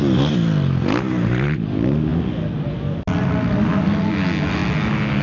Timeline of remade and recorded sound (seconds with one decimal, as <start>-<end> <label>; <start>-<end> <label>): 0.0-5.2 recorded